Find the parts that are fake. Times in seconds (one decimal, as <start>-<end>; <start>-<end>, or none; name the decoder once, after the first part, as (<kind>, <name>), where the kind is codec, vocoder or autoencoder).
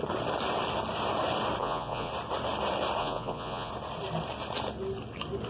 1.6-2.1 (vocoder, Vocos); 3.0-3.7